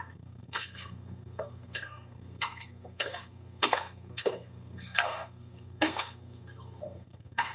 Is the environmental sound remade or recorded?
remade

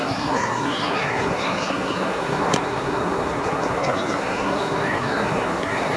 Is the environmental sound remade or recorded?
remade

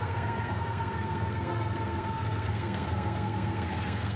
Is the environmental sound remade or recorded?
remade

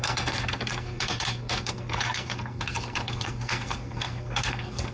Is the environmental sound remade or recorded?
remade